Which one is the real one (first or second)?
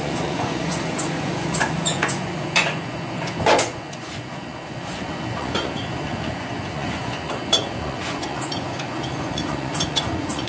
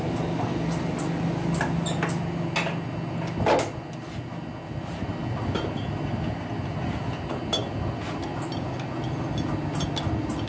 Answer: second